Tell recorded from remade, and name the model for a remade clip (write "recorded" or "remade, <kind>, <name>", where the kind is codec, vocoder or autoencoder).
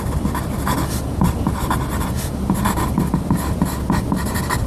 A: recorded